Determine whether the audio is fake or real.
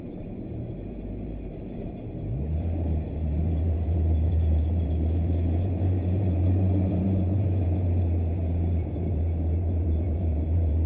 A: fake